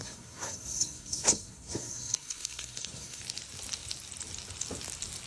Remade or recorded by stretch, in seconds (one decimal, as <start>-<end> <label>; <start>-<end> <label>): 0.0-3.2 remade; 3.2-5.3 recorded